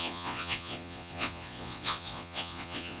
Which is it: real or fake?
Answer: fake